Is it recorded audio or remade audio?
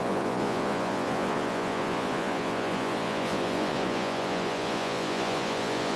remade